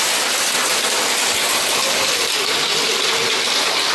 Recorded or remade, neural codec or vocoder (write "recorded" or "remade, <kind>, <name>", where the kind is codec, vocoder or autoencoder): recorded